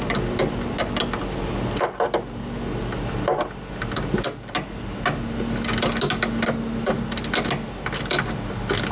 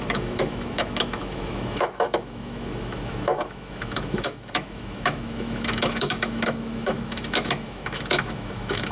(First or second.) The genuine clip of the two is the first